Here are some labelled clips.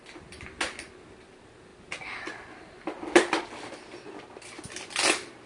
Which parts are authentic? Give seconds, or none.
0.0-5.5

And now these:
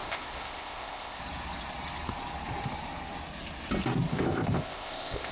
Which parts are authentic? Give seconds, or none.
1.2-4.1

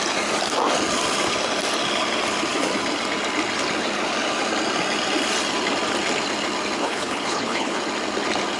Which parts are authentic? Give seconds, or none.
0.0-6.8; 7.8-8.6

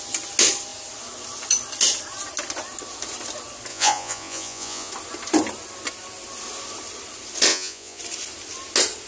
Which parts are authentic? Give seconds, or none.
0.0-3.7; 4.9-7.5; 8.0-9.1

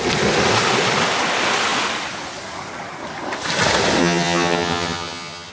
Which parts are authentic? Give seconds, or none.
0.0-4.0